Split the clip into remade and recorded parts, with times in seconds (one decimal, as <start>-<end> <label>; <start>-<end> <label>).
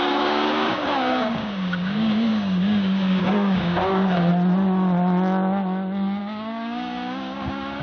0.0-4.3 remade; 4.3-6.2 recorded; 6.2-7.8 remade